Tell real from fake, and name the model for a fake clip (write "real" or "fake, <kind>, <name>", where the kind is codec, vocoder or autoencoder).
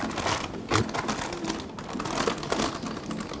real